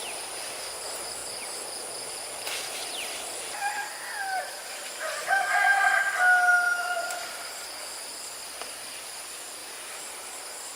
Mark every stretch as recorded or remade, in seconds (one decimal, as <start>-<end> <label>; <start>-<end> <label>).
0.0-10.8 recorded